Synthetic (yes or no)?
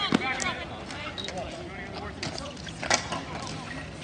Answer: no